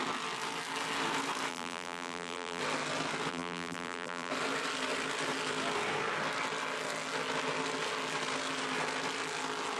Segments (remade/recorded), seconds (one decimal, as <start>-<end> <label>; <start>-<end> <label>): 0.0-1.5 recorded; 1.5-2.6 remade; 2.6-3.3 recorded; 3.3-4.3 remade; 4.3-9.8 recorded